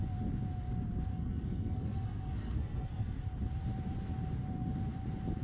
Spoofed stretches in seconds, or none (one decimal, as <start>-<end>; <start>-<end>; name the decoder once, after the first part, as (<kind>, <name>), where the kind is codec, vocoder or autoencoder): 1.1-3.2 (codec, SNAC)